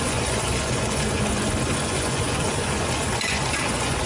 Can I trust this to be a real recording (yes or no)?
no